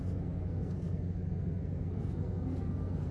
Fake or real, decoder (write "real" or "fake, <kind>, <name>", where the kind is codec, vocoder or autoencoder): fake, codec, SNAC